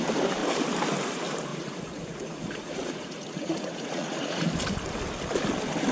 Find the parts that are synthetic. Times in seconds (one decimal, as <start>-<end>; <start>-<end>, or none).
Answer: 1.5-4.5